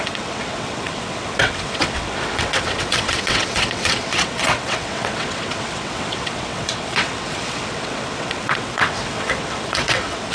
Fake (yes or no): yes